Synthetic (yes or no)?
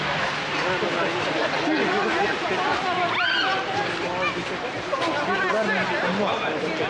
no